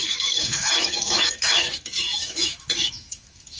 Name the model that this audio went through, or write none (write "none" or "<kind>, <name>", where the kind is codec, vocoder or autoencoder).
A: autoencoder, DAC-VAE